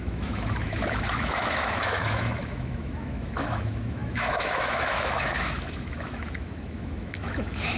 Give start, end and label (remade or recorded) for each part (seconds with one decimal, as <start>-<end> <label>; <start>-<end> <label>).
0.0-7.8 remade